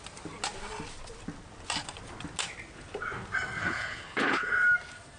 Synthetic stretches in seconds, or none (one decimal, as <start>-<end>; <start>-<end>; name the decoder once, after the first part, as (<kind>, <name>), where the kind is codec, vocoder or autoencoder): 3.6-4.5 (codec, HILCodec)